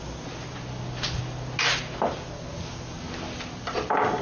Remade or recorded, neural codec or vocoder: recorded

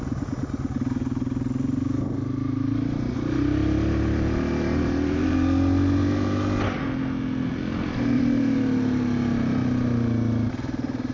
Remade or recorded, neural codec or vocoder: recorded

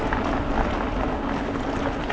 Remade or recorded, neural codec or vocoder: recorded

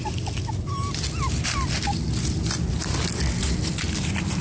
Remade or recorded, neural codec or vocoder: recorded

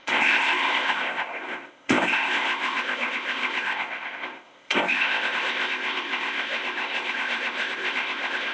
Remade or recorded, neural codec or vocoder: remade, codec, ZipCodec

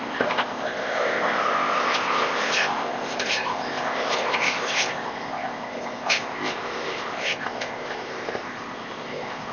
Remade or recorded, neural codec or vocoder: remade, codec, ZipCodec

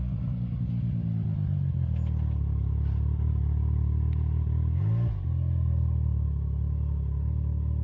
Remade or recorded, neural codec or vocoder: recorded